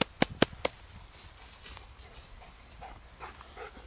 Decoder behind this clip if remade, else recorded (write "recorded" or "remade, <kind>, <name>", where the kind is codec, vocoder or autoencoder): recorded